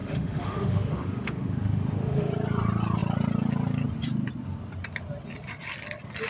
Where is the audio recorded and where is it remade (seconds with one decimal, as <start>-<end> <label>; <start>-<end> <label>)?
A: 0.0-2.3 remade; 2.3-6.3 recorded